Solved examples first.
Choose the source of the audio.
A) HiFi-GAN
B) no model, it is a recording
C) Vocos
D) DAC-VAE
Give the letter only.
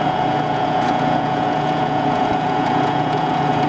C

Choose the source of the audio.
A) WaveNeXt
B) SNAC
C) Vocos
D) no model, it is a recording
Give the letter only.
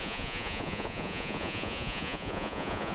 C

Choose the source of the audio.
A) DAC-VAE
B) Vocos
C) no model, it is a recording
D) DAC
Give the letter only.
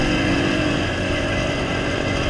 B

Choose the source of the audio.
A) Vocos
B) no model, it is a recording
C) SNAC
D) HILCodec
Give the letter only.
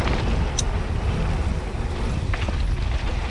B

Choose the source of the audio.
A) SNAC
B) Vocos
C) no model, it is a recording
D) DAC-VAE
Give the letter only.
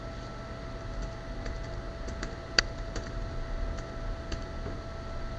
C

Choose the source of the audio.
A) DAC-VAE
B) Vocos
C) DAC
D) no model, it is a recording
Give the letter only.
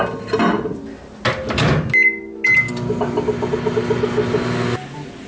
D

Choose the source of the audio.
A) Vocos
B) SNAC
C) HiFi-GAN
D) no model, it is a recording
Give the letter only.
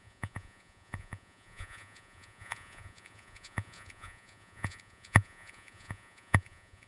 A